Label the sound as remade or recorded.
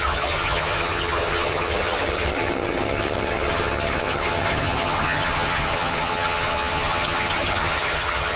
remade